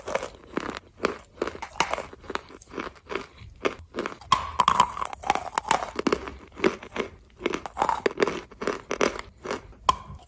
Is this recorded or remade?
recorded